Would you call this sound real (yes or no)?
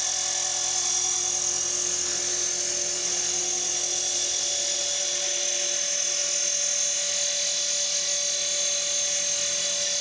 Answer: yes